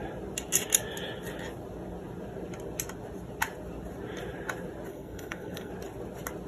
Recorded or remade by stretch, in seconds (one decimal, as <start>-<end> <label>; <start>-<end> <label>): 0.0-4.9 recorded; 4.9-5.7 remade; 5.7-6.5 recorded

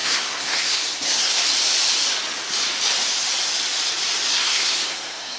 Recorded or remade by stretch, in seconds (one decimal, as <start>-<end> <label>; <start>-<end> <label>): 0.0-1.4 remade; 1.4-4.3 recorded; 4.3-5.4 remade

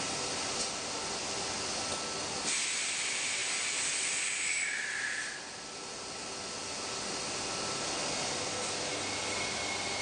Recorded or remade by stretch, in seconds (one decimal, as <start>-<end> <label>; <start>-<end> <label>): 0.0-10.0 recorded

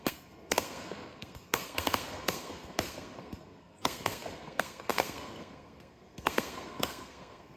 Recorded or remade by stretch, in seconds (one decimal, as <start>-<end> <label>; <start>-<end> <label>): 0.0-7.6 remade

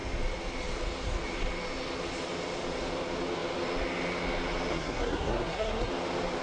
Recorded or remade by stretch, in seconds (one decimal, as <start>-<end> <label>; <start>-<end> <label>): 0.0-4.7 recorded; 4.7-5.9 remade; 5.9-6.4 recorded

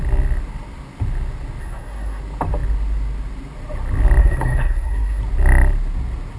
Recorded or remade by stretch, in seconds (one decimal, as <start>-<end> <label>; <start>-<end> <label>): 0.0-1.6 recorded; 1.6-2.2 remade; 2.2-4.2 recorded; 4.2-5.2 remade; 5.2-6.4 recorded

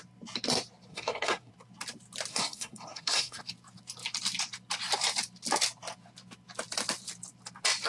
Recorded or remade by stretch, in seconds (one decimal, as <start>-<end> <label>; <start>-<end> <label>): 0.0-0.9 recorded; 0.9-1.5 remade; 1.5-2.3 recorded; 2.3-3.4 remade; 3.4-7.9 recorded

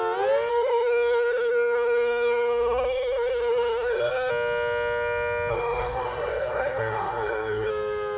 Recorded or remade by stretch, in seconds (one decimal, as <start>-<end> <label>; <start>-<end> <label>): 0.0-0.5 recorded; 0.5-4.3 remade; 4.3-5.5 recorded; 5.5-7.7 remade; 7.7-8.2 recorded